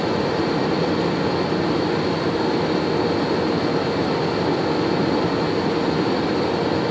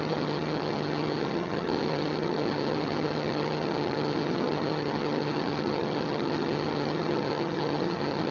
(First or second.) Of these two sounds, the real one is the first